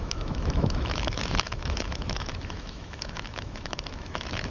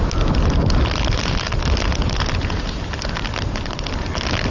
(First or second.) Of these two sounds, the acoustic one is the second